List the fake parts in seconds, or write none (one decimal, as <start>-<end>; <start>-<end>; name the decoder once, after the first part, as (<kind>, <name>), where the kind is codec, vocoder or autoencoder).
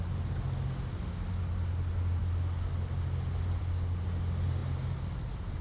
none